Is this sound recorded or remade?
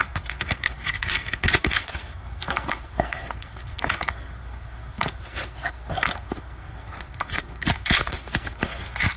remade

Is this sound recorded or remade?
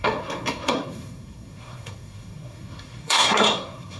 remade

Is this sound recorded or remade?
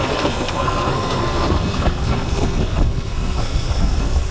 remade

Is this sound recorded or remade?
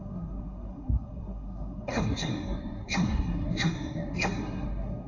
remade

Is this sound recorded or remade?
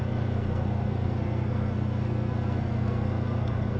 remade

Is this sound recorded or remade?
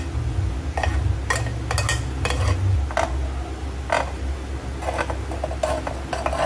recorded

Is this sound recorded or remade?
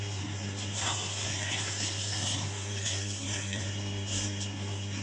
remade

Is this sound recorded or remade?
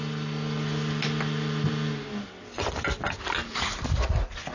recorded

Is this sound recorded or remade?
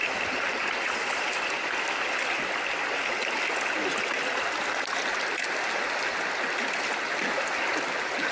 recorded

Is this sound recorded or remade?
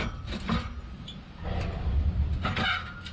recorded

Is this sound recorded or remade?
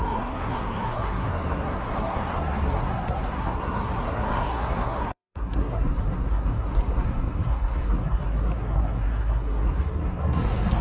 remade